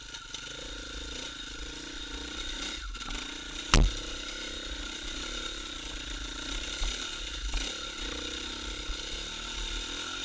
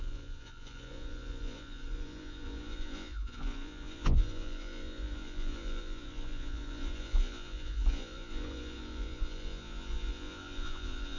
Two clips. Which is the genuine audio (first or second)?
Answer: first